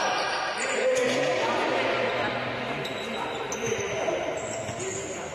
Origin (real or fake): real